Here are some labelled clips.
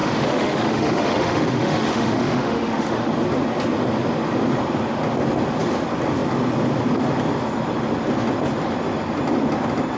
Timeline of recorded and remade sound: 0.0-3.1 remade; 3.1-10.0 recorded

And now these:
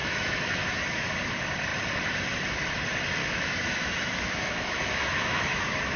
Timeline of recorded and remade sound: 0.0-1.1 remade; 1.1-3.2 recorded; 3.2-6.0 remade

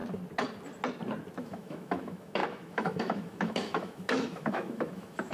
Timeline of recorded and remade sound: 0.0-1.4 recorded; 1.4-5.3 remade

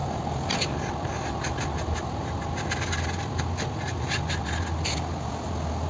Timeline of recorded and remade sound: 0.0-5.9 recorded

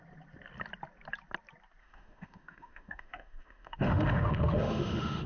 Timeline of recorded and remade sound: 0.0-1.8 recorded; 1.8-5.3 remade

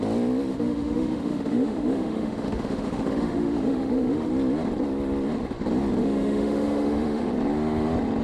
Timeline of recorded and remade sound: 0.0-0.5 recorded; 0.5-4.3 remade; 4.3-6.0 recorded; 6.0-7.3 remade; 7.3-8.2 recorded

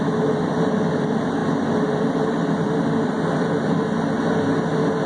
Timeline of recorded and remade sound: 0.0-5.1 recorded